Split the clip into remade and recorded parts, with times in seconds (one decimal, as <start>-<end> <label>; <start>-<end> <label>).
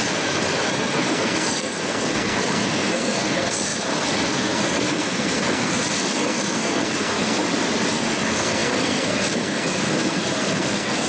0.0-7.4 remade; 7.4-7.9 recorded; 7.9-11.1 remade